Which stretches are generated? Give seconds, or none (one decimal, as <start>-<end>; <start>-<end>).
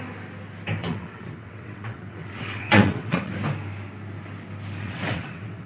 0.8-3.3; 4.8-5.7